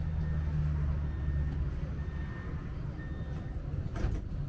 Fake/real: real